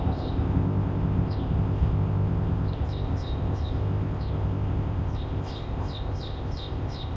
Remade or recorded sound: remade